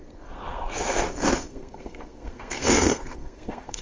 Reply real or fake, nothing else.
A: fake